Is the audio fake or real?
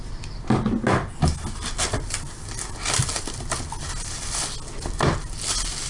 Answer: real